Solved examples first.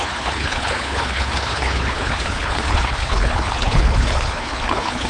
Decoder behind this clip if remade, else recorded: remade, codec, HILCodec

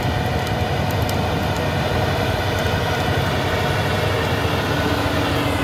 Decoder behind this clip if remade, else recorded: recorded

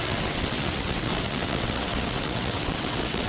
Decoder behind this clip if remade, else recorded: remade, vocoder, WaveNeXt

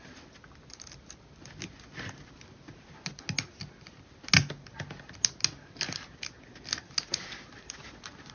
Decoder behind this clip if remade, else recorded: recorded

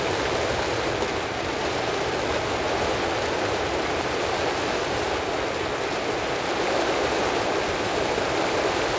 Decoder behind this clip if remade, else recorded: recorded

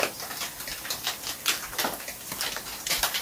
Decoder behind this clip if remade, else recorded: recorded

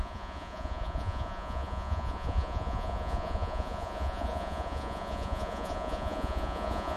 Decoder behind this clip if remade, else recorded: remade, vocoder, Vocos